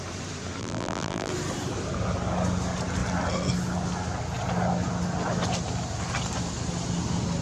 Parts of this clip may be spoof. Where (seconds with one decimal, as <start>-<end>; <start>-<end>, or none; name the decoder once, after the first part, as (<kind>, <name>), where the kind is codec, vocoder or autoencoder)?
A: 0.6-1.3 (vocoder, BigVGAN v2)